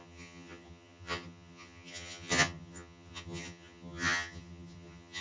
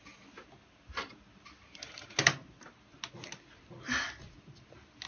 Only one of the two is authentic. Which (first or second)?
second